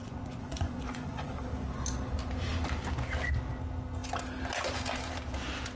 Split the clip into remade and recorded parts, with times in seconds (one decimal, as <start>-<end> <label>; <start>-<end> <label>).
0.0-1.3 remade; 1.3-5.8 recorded